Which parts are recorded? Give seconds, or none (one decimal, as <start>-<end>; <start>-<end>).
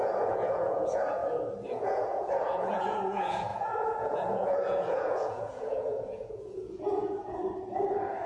1.2-1.7; 7.4-8.3